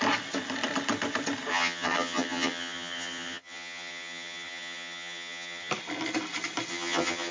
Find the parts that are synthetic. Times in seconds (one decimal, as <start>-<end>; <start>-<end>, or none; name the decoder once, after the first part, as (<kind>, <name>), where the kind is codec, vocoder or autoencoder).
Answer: 1.5-5.7 (vocoder, HiFi-GAN); 6.7-7.3